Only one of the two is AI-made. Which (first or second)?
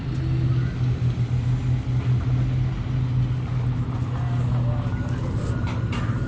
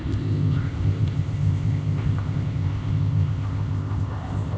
second